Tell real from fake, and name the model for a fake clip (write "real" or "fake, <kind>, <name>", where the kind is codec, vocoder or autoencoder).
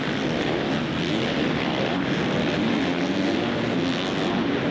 real